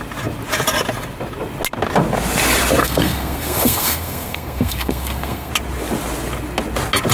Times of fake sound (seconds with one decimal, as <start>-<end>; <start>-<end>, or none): 2.8-5.5